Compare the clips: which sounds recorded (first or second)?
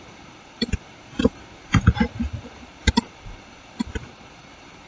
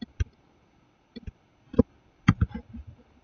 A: second